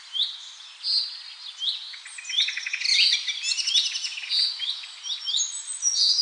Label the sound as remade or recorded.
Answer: recorded